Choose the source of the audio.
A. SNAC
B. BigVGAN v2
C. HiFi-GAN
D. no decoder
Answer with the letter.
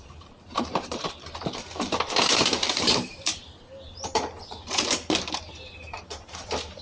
B